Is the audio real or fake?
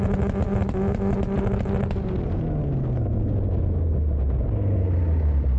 real